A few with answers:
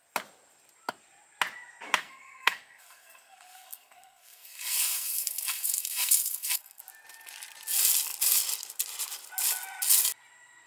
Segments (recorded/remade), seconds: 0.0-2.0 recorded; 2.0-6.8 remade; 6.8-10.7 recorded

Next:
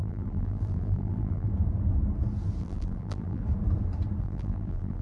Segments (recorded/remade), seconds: 0.0-1.5 remade; 1.5-2.6 recorded; 2.6-3.4 remade; 3.4-4.2 recorded; 4.2-5.0 remade

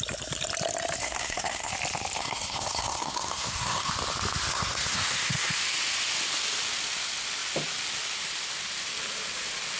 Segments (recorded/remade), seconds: 0.0-1.0 recorded; 1.0-1.7 remade; 1.7-2.2 recorded; 2.2-3.9 remade; 3.9-4.5 recorded; 4.5-5.6 remade; 5.6-9.8 recorded

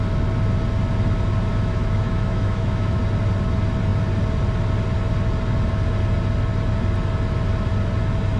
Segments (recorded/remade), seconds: 0.0-1.5 recorded; 1.5-3.0 remade; 3.0-8.4 recorded

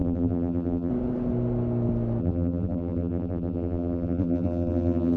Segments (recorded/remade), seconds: 0.0-0.9 remade; 0.9-2.2 recorded; 2.2-5.2 remade

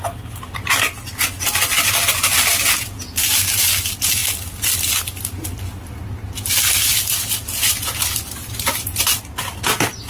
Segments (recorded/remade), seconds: 0.0-10.1 recorded

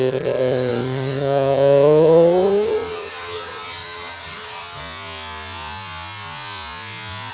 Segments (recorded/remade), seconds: 0.0-4.8 remade; 4.8-7.3 recorded